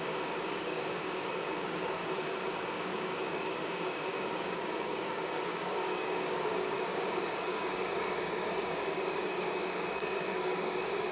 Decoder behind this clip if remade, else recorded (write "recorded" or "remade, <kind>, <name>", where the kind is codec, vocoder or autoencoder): remade, codec, DAC